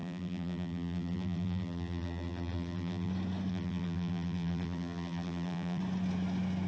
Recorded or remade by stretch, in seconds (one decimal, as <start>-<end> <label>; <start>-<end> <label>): 0.0-3.1 remade; 3.1-3.5 recorded; 3.5-5.8 remade; 5.8-6.7 recorded